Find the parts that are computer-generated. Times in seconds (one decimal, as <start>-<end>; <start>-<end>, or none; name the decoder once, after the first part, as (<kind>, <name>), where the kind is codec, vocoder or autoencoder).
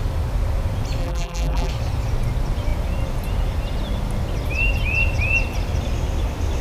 1.0-1.7 (vocoder, BigVGAN v2)